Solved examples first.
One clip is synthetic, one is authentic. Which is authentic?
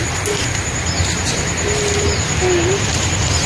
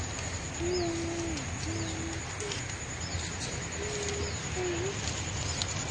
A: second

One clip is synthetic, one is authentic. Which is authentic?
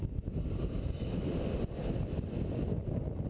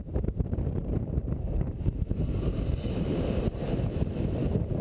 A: first